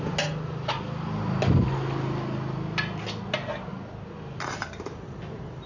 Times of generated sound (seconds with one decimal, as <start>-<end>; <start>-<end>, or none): none